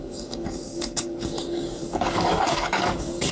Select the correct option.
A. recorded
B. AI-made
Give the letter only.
B